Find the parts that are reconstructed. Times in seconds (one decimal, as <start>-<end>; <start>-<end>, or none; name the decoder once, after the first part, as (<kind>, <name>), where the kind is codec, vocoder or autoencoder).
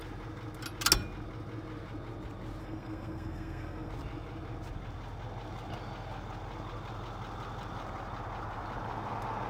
2.6-3.9 (codec, SNAC)